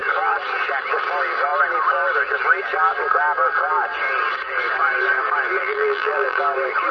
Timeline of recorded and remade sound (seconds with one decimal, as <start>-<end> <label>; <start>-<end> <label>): 0.0-5.6 recorded; 5.6-6.4 remade; 6.4-6.9 recorded